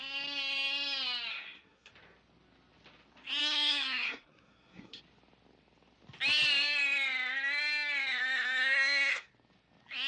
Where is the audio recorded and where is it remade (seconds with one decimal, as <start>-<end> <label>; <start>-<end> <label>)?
0.0-1.3 recorded; 1.3-1.9 remade; 1.9-3.4 recorded; 3.4-5.0 remade; 5.0-8.6 recorded; 8.6-9.3 remade; 9.3-10.1 recorded